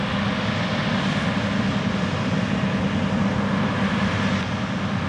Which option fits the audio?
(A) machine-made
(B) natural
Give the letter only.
B